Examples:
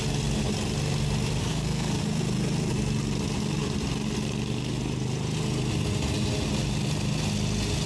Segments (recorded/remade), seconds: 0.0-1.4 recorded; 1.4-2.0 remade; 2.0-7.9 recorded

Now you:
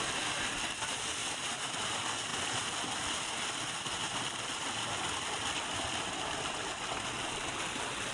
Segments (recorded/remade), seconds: 0.0-8.1 recorded

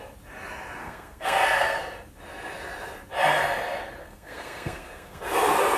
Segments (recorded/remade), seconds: 0.0-0.8 recorded; 0.8-1.8 remade; 1.8-4.0 recorded; 4.0-5.2 remade; 5.2-5.8 recorded